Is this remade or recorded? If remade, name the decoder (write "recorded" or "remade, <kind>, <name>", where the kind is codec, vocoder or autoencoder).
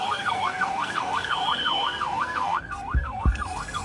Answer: remade, codec, SNAC